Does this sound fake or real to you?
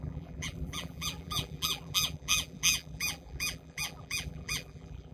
fake